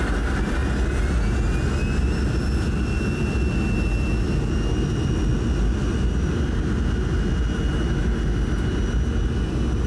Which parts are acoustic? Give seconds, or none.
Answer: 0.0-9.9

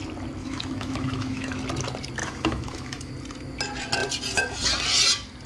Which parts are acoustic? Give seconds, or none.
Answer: 0.0-0.4; 1.6-2.2; 3.1-5.5